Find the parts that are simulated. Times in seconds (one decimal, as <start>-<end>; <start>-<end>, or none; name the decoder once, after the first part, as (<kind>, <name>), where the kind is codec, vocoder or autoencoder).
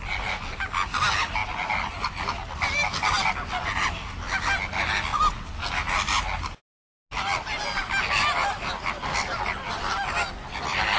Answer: none